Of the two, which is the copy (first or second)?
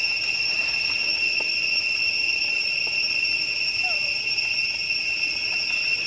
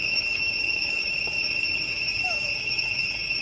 second